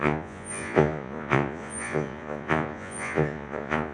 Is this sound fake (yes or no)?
yes